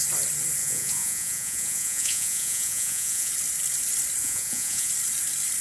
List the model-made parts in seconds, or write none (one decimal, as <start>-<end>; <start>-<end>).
0.6-3.3; 4.2-4.9